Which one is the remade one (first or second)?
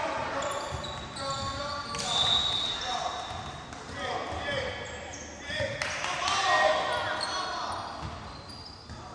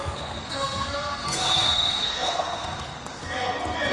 second